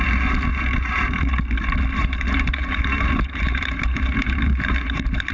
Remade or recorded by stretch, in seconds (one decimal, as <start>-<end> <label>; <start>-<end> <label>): 0.0-0.5 recorded; 0.5-1.2 remade; 1.2-2.0 recorded; 2.0-5.3 remade